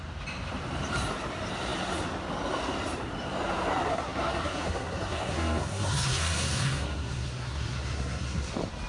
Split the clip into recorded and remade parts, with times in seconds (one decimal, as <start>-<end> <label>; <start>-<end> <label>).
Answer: 0.0-3.9 recorded; 3.9-8.5 remade; 8.5-8.9 recorded